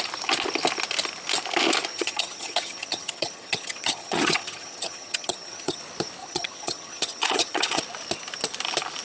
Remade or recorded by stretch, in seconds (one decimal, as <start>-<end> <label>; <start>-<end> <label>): 0.0-1.9 recorded; 1.9-5.8 remade; 5.8-6.2 recorded; 6.2-7.8 remade; 7.8-9.0 recorded